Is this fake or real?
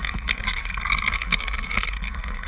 fake